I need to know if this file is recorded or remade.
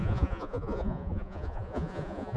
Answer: remade